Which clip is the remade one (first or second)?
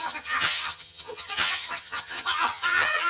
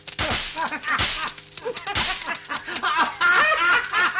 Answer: first